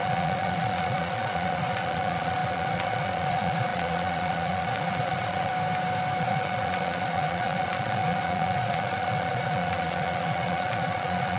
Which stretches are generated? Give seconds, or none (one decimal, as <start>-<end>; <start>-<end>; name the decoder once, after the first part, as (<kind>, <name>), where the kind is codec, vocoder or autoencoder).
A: 0.0-5.5 (vocoder, Vocos); 6.2-11.4